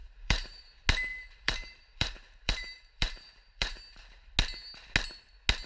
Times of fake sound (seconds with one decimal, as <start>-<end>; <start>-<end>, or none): 0.0-0.6; 1.1-4.3